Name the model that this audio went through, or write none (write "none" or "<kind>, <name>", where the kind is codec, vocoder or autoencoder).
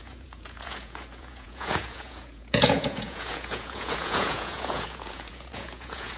vocoder, Vocos